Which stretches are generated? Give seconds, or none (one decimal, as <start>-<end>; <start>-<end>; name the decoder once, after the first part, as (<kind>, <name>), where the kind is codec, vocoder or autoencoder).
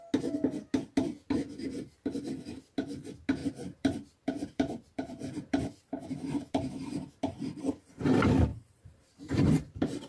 3.4-7.6 (vocoder, BigVGAN v2); 8.5-10.1